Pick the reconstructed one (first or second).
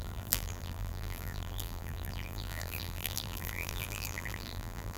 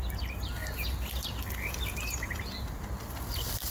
first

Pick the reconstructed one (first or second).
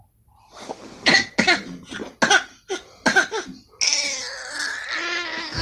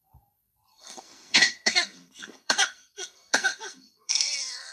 second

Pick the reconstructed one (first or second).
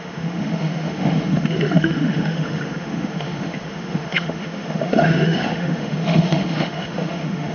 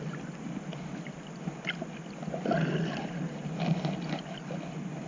first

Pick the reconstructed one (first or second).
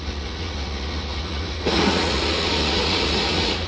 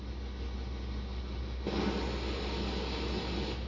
first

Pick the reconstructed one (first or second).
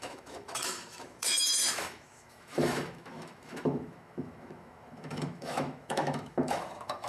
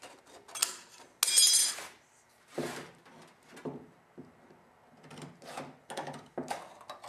first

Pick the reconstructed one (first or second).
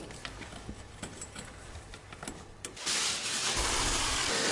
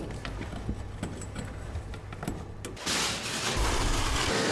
first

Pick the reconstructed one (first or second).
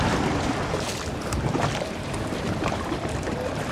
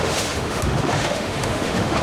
second